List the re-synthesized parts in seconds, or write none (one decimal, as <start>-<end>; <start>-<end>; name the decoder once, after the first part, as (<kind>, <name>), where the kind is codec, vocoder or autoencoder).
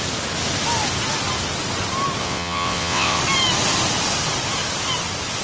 2.2-3.2 (vocoder, WaveNeXt)